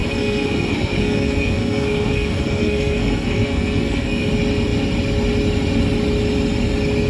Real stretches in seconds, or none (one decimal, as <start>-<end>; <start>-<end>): 4.3-7.1